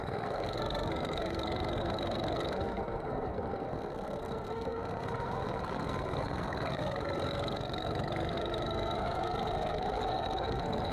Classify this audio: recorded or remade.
remade